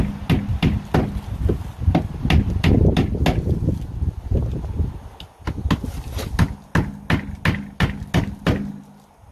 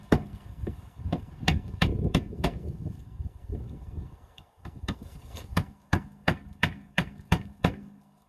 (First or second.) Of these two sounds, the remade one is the second